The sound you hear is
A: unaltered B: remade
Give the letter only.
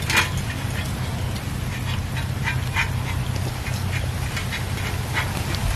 A